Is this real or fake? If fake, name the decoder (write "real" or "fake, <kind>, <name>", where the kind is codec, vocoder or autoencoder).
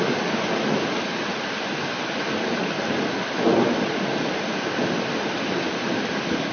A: real